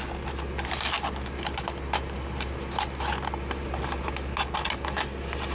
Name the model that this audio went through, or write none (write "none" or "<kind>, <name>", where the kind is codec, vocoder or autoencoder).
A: none